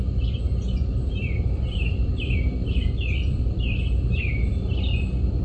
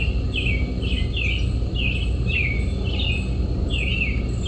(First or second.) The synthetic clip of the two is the first